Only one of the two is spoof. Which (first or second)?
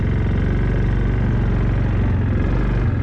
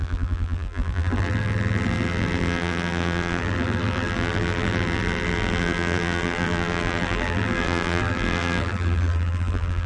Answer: second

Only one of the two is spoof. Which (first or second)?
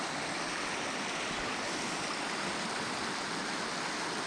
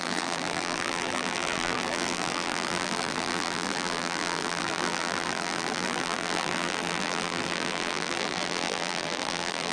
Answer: second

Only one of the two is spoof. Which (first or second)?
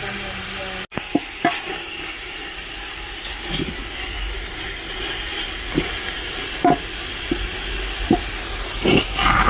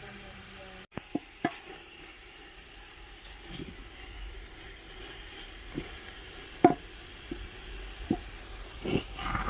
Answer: second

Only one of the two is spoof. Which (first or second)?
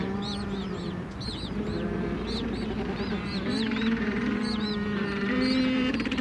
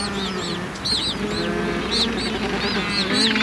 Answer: first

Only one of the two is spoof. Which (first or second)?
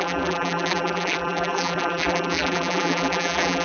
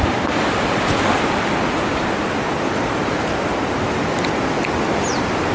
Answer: first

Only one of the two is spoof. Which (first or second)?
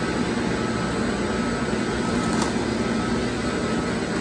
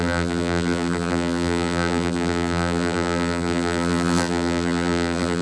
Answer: second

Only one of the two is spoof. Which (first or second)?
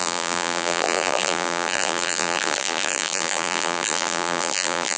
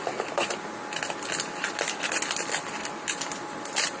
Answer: first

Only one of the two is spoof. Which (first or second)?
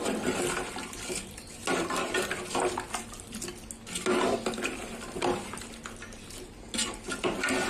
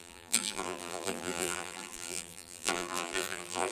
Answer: second